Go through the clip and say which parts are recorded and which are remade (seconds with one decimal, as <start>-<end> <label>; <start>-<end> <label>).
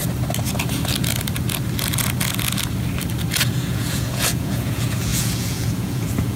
0.0-3.5 recorded; 3.5-6.4 remade